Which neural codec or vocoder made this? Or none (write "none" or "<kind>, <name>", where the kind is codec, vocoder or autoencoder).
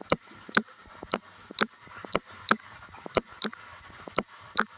none